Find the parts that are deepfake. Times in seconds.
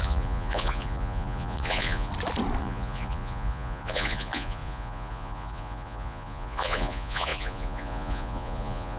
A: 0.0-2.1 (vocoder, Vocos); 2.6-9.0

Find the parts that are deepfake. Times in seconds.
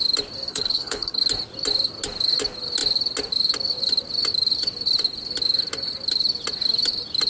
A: 0.5-1.2 (codec, HILCodec)